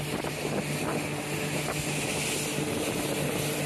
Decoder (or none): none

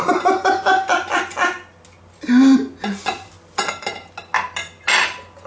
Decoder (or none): none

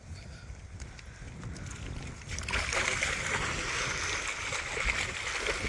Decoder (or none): none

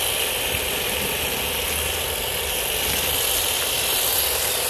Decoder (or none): none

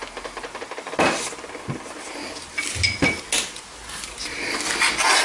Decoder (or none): none